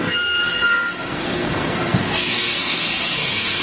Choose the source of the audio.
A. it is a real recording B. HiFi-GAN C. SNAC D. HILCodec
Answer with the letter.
C